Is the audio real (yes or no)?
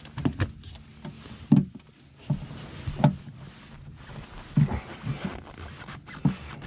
yes